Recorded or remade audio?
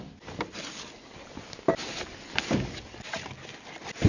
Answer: recorded